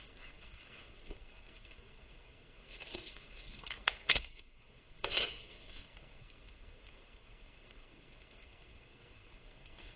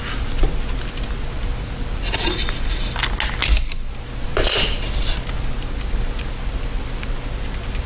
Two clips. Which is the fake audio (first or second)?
first